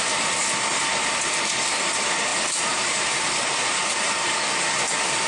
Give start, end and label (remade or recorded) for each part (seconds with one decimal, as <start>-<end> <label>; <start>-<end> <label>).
0.0-2.3 recorded; 2.3-4.4 remade; 4.4-5.3 recorded

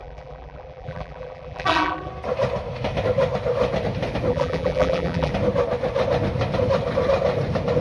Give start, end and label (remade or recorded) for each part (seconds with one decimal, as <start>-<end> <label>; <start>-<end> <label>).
0.0-2.1 remade; 2.1-4.3 recorded; 4.3-5.3 remade; 5.3-7.8 recorded

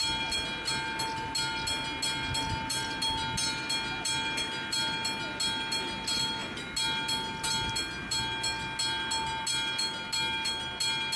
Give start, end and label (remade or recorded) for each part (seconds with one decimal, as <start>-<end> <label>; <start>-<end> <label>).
0.0-11.2 recorded

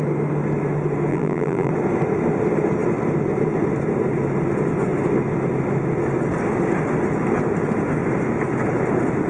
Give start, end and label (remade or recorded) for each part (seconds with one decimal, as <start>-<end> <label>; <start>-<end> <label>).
0.0-1.1 recorded; 1.1-1.7 remade; 1.7-9.3 recorded

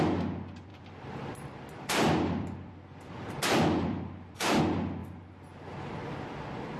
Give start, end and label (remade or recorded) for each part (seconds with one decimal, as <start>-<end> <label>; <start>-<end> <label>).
0.0-0.7 recorded; 0.7-4.6 remade; 4.6-6.8 recorded

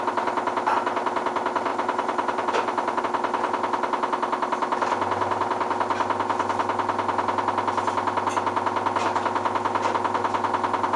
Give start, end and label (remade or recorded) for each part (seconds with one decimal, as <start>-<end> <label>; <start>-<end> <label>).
0.0-1.7 recorded; 1.7-3.0 remade; 3.0-11.0 recorded